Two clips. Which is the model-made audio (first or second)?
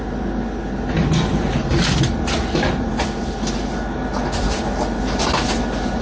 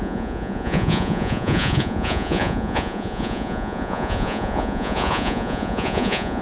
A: second